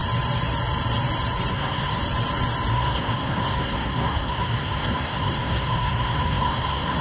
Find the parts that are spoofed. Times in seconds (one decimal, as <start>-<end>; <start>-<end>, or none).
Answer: 1.5-2.0; 2.7-7.0